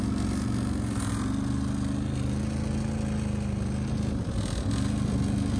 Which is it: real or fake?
real